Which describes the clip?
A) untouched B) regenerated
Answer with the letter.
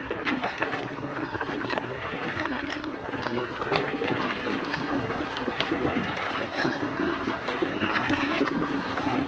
B